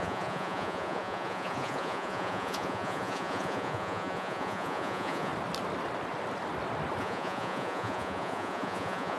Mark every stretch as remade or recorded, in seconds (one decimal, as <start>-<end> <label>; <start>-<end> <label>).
0.0-5.3 remade; 5.3-7.0 recorded; 7.0-9.2 remade